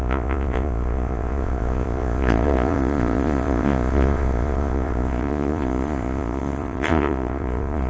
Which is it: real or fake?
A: fake